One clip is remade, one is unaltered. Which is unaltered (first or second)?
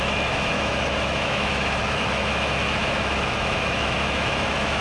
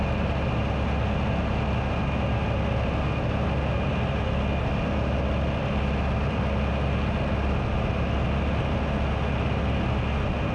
second